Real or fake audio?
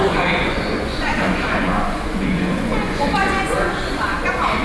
fake